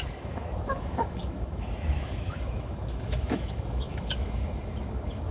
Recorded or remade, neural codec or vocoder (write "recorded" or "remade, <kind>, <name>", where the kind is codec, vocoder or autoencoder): remade, autoencoder, DAC-VAE